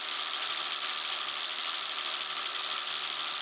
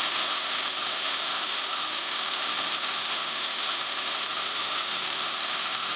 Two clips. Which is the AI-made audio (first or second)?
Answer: second